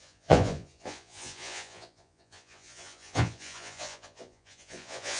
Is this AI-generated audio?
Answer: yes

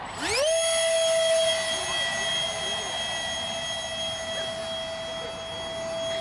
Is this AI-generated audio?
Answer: no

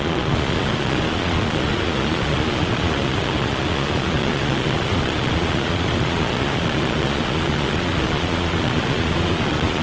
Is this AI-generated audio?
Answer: yes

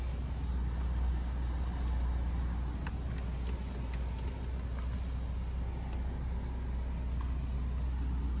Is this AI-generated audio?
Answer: no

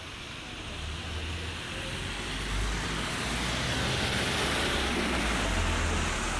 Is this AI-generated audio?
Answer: no